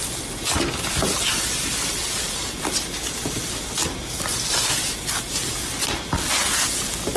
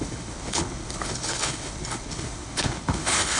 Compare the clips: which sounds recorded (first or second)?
first